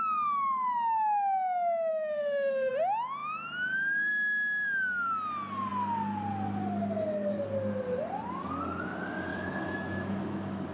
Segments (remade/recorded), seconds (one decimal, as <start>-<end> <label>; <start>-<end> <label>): 0.0-1.9 recorded; 1.9-2.7 remade; 2.7-9.3 recorded; 9.3-10.7 remade